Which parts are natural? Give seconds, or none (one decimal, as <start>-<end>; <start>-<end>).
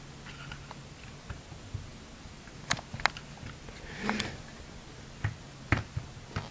0.0-6.5